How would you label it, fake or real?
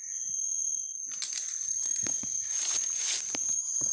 real